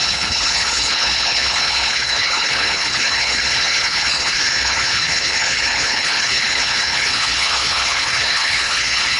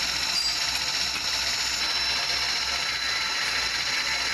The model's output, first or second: first